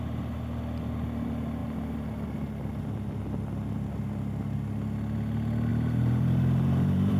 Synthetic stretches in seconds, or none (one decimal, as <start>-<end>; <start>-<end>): 5.7-7.2